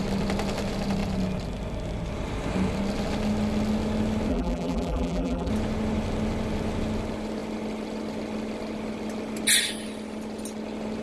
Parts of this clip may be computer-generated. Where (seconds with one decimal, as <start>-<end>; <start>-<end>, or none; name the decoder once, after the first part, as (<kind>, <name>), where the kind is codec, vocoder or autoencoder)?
4.3-5.5 (vocoder, BigVGAN v2)